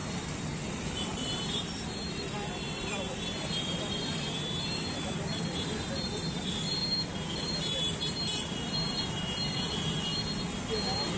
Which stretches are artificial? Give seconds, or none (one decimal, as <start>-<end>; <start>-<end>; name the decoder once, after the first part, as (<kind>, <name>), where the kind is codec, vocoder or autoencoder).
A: 0.8-6.8 (vocoder, BigVGAN v2); 7.4-10.1; 10.6-11.2

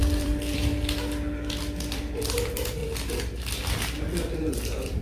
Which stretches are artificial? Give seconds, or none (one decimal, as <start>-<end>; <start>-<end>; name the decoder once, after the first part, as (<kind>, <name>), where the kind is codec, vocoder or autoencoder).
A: 0.0-0.7 (vocoder, BigVGAN v2); 2.2-2.8; 4.5-5.0

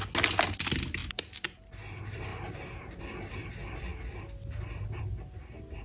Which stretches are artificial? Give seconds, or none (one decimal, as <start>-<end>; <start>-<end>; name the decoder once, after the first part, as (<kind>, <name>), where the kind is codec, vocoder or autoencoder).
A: 1.0-1.6 (vocoder, BigVGAN v2); 2.3-3.0

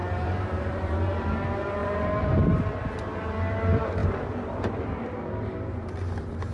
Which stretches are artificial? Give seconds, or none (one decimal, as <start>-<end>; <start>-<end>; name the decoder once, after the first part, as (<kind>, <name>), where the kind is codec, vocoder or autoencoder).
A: 0.0-0.8 (vocoder, BigVGAN v2); 1.8-2.4; 4.0-5.1